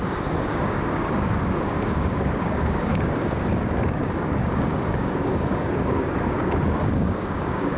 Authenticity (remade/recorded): remade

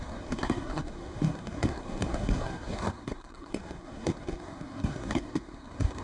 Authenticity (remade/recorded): remade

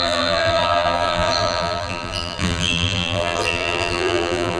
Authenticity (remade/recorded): remade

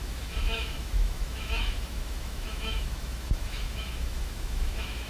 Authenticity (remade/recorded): remade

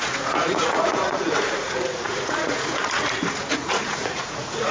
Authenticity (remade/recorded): remade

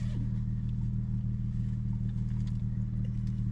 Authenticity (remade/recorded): recorded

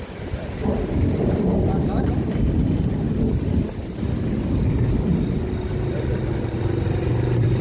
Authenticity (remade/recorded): recorded